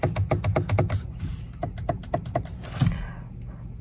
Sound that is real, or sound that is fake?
real